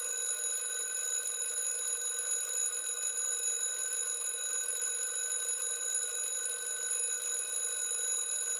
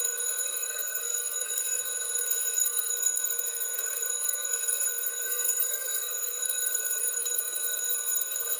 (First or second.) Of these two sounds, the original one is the first